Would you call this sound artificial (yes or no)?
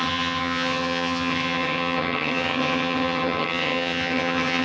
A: yes